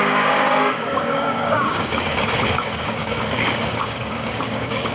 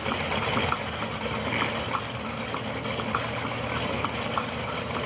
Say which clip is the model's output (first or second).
first